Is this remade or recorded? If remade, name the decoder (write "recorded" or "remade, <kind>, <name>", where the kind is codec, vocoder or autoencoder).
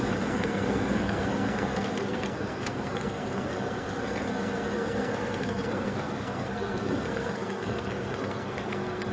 remade, codec, SNAC